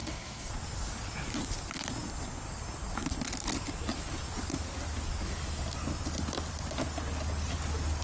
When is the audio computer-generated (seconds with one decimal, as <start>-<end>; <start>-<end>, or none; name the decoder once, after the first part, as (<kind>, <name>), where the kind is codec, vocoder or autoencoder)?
0.0-0.5 (codec, DAC)